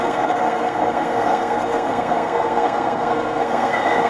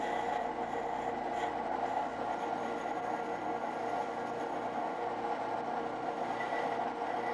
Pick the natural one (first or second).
second